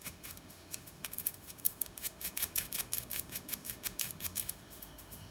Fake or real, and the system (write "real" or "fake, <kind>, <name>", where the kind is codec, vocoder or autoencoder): fake, autoencoder, DAC-VAE